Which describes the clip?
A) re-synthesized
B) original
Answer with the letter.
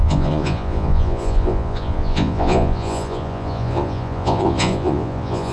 A